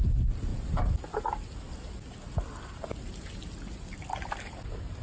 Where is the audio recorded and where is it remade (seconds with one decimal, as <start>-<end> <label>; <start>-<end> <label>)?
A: 0.0-5.0 recorded